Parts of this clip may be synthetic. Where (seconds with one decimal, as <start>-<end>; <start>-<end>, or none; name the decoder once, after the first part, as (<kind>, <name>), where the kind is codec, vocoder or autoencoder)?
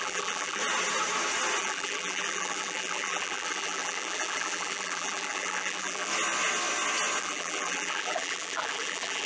0.0-0.6 (vocoder, BigVGAN v2); 1.6-6.1; 7.2-9.3